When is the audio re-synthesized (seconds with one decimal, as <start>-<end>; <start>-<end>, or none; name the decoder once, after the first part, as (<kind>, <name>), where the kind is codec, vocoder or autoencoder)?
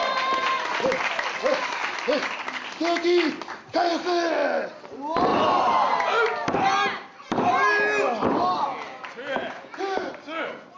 none